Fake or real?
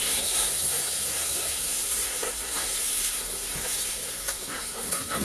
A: fake